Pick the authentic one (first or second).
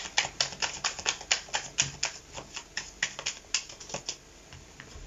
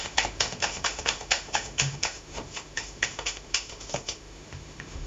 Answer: first